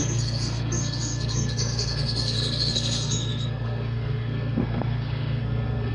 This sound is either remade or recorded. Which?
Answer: remade